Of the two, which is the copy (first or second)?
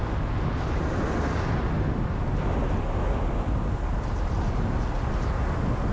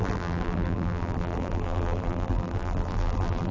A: second